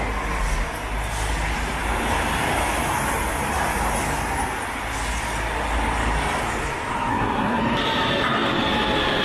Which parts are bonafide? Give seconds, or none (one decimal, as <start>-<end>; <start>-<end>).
0.0-7.1; 7.6-9.2